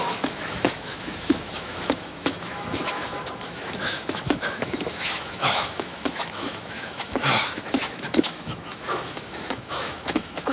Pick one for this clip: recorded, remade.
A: remade